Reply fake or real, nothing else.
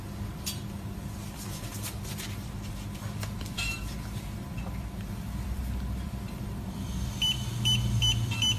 fake